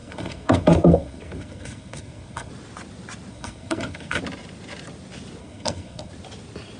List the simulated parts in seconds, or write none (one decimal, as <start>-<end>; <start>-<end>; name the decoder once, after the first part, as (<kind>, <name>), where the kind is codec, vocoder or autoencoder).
0.0-2.5 (codec, SNAC); 3.3-4.2; 5.4-6.1